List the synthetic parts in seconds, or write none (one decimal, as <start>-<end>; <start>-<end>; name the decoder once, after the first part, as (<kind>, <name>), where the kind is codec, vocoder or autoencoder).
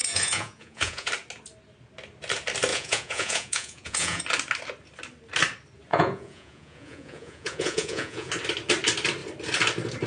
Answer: 0.0-1.1 (vocoder, Vocos); 2.7-4.2; 5.9-8.3